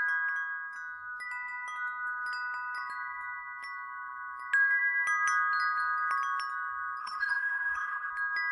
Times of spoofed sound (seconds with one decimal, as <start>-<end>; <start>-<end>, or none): 7.0-8.1